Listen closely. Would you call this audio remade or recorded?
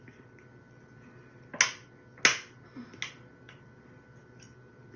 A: recorded